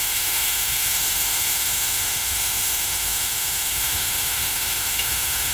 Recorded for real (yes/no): no